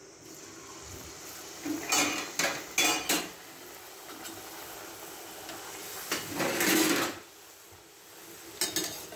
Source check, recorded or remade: recorded